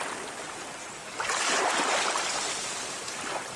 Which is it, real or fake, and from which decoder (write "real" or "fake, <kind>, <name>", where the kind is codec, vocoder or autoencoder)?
real